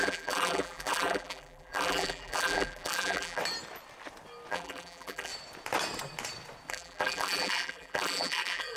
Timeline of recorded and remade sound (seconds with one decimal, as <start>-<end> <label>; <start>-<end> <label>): 0.0-3.4 remade; 3.4-4.5 recorded; 4.5-5.3 remade; 5.3-6.7 recorded; 6.7-8.8 remade